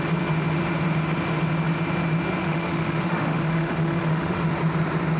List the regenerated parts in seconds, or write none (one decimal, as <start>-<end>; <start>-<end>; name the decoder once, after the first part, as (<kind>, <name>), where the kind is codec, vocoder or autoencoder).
2.4-4.5 (autoencoder, DAC-VAE)